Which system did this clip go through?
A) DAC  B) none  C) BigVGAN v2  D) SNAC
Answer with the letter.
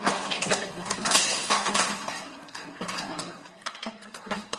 D